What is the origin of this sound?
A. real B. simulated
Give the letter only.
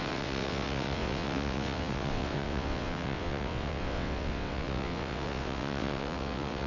B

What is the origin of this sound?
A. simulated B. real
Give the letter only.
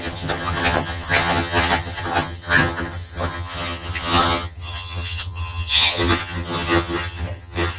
A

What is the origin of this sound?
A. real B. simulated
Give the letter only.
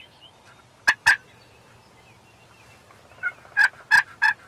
A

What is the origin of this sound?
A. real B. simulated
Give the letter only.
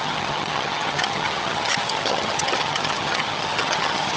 B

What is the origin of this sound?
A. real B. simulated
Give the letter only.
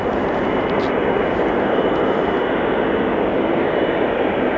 A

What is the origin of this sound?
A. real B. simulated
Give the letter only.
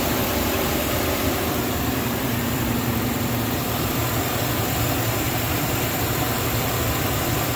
B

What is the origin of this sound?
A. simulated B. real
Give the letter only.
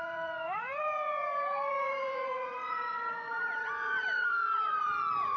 A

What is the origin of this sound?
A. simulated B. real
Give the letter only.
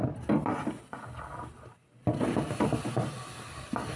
B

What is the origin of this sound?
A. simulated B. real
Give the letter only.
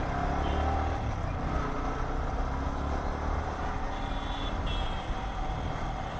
B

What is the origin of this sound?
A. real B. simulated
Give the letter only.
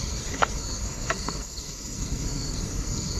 B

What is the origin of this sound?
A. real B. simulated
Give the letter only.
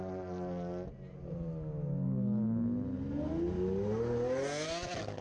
A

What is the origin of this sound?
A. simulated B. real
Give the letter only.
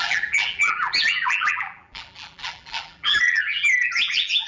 A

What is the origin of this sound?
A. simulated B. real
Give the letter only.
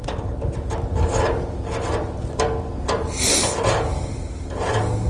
B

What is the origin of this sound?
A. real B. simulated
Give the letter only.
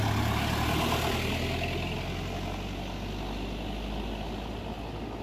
A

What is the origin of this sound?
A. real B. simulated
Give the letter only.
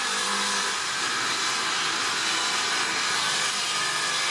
A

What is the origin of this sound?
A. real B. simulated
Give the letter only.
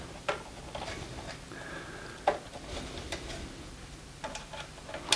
A